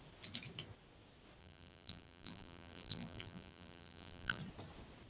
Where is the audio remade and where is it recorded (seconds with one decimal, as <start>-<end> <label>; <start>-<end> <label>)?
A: 0.0-1.4 recorded; 1.4-4.4 remade; 4.4-5.1 recorded